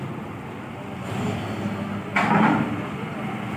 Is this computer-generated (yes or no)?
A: no